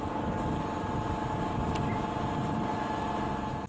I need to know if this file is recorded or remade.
recorded